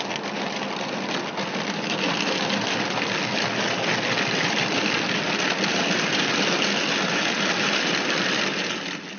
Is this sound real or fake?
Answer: real